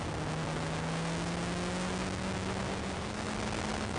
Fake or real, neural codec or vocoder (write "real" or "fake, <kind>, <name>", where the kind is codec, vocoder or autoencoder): real